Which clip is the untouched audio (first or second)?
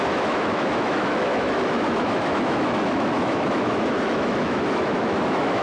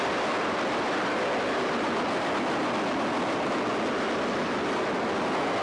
second